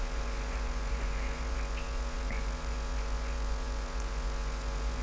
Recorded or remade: remade